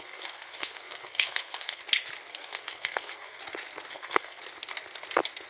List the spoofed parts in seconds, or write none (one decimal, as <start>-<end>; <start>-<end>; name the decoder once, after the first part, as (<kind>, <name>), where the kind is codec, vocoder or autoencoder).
0.0-1.8 (codec, SNAC); 2.3-3.4; 3.9-4.4